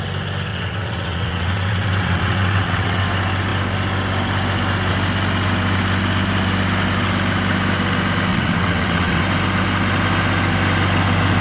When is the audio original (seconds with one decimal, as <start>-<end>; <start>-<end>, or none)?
0.0-0.5; 3.0-8.3; 9.2-11.4